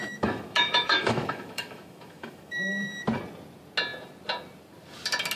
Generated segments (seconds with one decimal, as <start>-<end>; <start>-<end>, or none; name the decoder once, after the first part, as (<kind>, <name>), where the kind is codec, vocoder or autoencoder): 0.0-2.9 (autoencoder, DAC-VAE)